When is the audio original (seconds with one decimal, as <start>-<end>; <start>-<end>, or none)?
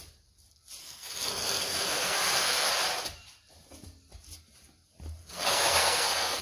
0.0-0.8; 2.7-5.2